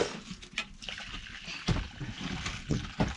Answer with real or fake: real